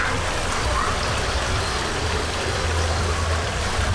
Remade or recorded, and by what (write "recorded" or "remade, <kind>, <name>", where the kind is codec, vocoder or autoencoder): recorded